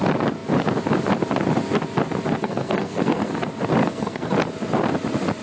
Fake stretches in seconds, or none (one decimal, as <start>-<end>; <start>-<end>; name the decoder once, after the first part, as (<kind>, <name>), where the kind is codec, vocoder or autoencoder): 2.4-3.3 (codec, SNAC); 3.8-4.3